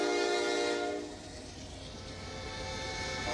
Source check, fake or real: real